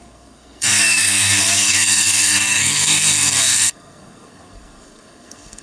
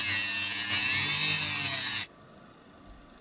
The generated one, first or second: first